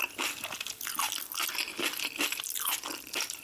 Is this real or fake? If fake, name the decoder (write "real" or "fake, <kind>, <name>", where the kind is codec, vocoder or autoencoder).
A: real